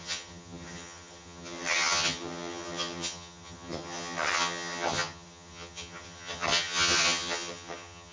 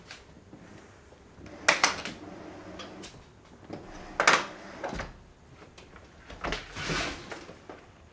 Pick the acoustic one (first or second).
second